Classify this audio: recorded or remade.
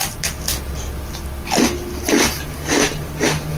recorded